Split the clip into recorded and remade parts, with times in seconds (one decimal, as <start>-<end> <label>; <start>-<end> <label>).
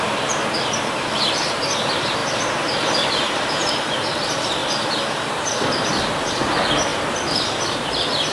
0.0-4.6 remade; 4.6-5.1 recorded; 5.1-8.3 remade